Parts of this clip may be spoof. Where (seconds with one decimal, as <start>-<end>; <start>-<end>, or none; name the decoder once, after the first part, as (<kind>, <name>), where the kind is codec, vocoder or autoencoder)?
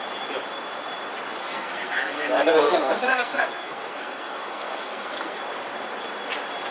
1.4-5.4 (codec, SNAC)